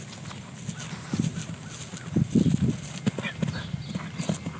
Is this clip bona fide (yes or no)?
yes